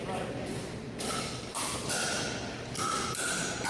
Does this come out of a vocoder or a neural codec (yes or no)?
no